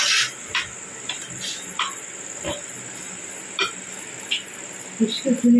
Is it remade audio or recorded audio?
recorded